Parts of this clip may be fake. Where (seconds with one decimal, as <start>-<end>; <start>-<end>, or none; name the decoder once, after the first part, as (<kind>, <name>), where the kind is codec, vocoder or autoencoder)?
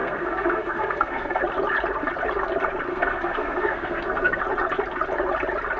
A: 0.0-1.4 (codec, SNAC); 2.9-4.4